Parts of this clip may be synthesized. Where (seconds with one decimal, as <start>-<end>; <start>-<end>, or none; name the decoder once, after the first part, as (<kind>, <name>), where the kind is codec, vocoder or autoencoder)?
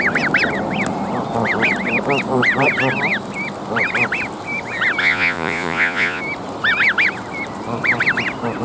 5.0-6.2 (vocoder, Vocos)